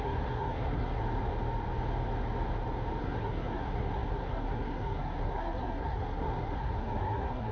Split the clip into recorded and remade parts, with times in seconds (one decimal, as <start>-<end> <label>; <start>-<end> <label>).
0.0-1.0 remade; 1.0-3.0 recorded; 3.0-7.5 remade